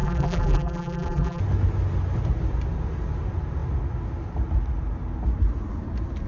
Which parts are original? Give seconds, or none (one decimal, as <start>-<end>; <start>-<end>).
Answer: 1.4-6.3